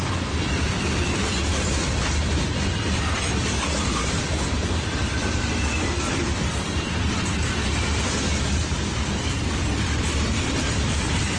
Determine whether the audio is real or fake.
fake